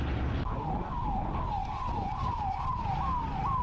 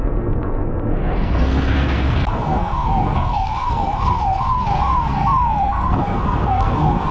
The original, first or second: first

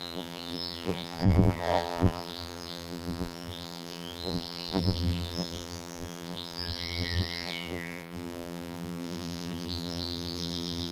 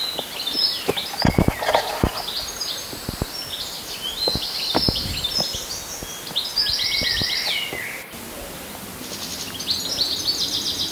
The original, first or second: second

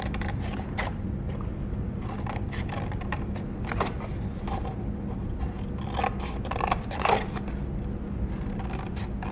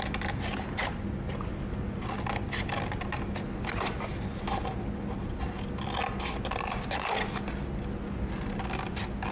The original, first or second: second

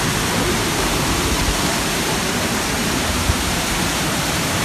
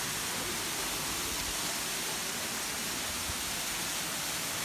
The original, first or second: second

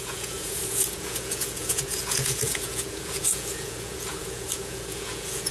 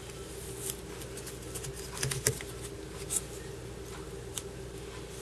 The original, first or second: second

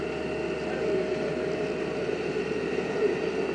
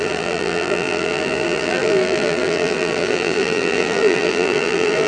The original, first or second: first